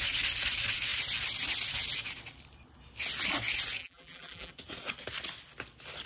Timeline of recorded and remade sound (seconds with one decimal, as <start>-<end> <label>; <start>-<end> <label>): 0.0-3.8 recorded; 3.8-4.5 remade; 4.5-6.1 recorded